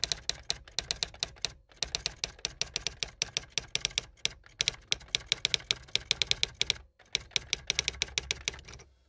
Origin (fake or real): real